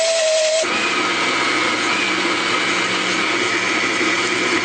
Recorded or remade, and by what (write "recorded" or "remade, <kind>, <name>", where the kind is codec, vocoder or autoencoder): recorded